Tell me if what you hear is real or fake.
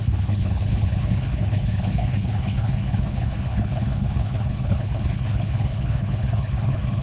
fake